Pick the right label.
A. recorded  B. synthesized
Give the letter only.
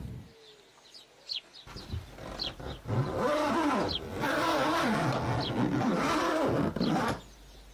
A